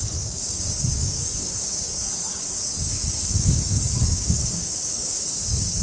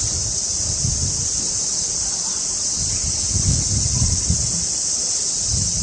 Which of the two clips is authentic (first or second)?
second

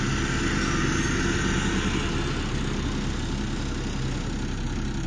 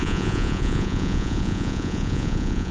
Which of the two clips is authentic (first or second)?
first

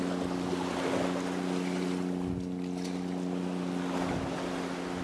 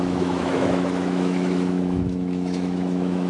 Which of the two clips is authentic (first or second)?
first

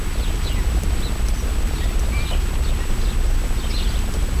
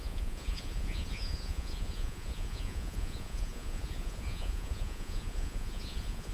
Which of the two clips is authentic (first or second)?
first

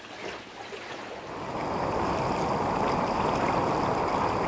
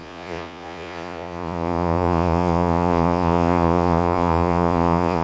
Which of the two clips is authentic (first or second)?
first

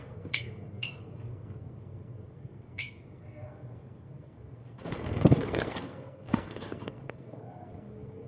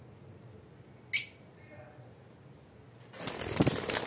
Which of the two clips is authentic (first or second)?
second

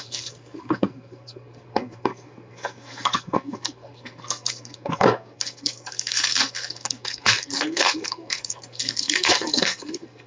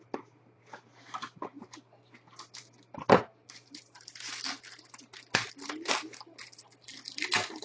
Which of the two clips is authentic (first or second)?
second